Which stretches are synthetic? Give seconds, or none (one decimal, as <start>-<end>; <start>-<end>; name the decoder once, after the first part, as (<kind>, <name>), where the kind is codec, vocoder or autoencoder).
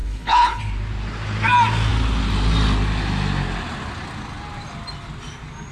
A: 0.0-0.6 (codec, HILCodec)